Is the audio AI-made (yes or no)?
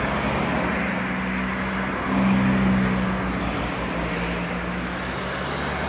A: no